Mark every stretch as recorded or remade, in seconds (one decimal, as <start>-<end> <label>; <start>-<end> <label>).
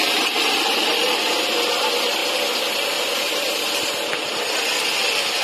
0.0-1.2 remade; 1.2-5.4 recorded